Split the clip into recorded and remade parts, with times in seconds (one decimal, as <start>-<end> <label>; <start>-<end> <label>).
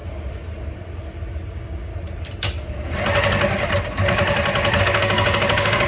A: 0.0-1.5 recorded; 1.5-1.9 remade; 1.9-4.8 recorded; 4.8-5.9 remade